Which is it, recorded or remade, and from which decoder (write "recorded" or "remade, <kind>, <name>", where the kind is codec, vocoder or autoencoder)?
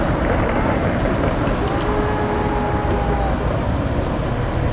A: recorded